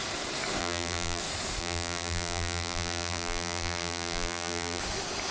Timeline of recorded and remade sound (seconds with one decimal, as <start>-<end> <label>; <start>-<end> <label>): 0.0-0.6 recorded; 0.6-1.2 remade; 1.2-1.6 recorded; 1.6-4.8 remade; 4.8-5.3 recorded